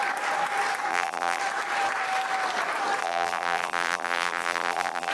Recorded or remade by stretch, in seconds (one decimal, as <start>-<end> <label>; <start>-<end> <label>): 0.0-0.9 recorded; 0.9-1.4 remade; 1.4-3.0 recorded; 3.0-5.1 remade